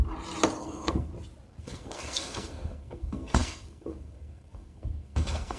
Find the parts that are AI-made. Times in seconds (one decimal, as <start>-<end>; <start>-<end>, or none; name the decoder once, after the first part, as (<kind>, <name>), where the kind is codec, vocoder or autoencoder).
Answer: 0.6-1.1 (codec, SNAC); 1.6-5.6